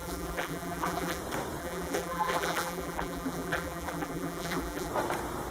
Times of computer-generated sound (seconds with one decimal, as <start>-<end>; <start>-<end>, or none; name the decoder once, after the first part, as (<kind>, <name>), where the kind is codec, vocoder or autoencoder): 0.0-1.2 (vocoder, BigVGAN v2); 1.6-4.9